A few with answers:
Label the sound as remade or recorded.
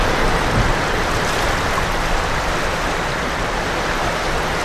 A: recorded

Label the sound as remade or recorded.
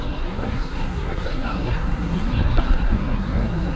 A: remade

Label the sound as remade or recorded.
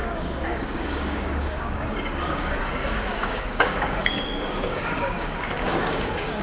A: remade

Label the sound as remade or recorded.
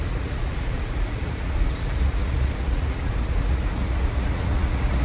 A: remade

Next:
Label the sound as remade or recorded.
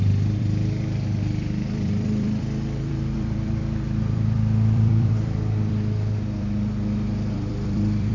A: remade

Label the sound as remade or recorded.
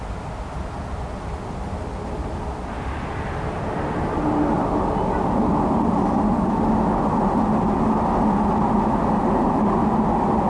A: recorded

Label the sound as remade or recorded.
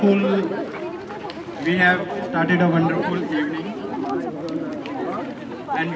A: recorded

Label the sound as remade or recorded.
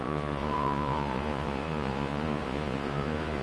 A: remade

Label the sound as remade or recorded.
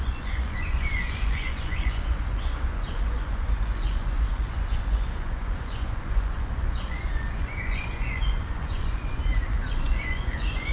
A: remade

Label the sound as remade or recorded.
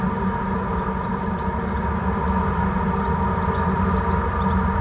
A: recorded